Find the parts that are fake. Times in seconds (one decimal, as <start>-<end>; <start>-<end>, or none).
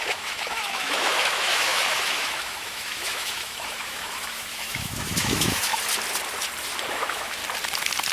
0.0-5.7; 6.9-7.4